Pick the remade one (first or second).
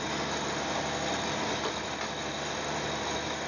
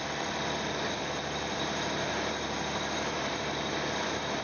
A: second